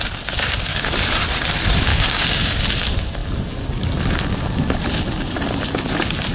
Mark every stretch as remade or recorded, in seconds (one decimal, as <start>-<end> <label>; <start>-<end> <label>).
0.0-0.7 recorded; 0.7-1.2 remade; 1.2-1.9 recorded; 1.9-2.6 remade; 2.6-6.3 recorded

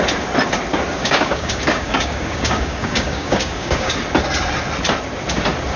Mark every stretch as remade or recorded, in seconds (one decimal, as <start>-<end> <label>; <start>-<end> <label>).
0.0-1.0 recorded; 1.0-3.9 remade; 3.9-5.8 recorded

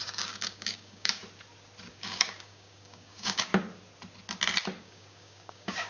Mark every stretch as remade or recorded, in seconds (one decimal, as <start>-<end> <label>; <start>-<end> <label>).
0.0-1.2 remade; 1.2-1.9 recorded; 1.9-3.5 remade; 3.5-4.8 recorded; 4.8-5.9 remade